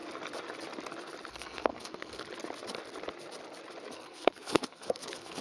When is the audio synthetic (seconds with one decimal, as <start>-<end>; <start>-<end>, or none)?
1.3-2.2; 3.9-5.4